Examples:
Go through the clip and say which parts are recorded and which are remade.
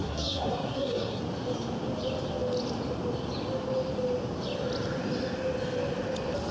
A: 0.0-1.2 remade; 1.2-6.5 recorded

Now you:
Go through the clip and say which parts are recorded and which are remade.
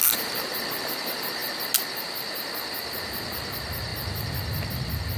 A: 0.0-5.2 recorded